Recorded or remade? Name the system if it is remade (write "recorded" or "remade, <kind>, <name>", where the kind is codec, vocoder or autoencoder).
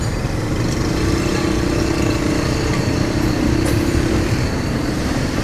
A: remade, vocoder, BigVGAN v2